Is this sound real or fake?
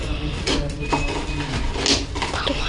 real